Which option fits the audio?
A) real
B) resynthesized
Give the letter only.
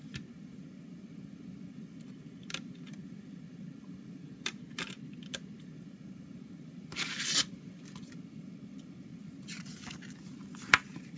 A